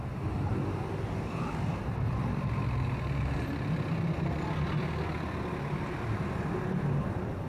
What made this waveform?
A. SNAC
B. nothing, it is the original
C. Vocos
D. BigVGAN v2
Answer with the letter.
B